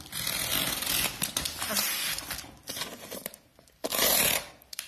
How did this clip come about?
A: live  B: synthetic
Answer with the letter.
A